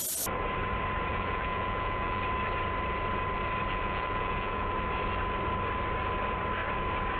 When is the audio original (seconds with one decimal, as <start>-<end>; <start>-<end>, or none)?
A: 0.0-1.1; 2.2-3.7; 4.7-7.2